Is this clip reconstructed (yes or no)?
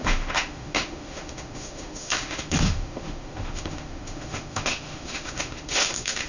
yes